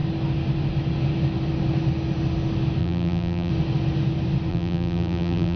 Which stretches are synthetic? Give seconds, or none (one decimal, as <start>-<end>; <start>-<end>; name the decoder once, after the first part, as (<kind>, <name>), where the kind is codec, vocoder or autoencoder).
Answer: 2.8-3.5 (vocoder, BigVGAN v2); 4.5-5.6